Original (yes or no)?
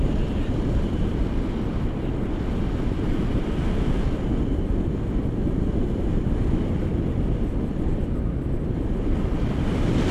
yes